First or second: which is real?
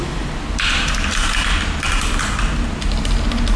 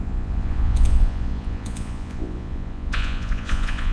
first